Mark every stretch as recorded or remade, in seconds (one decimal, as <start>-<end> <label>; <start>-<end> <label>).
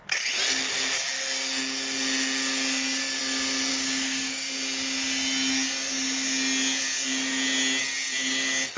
0.0-3.7 recorded; 3.7-4.5 remade; 4.5-8.8 recorded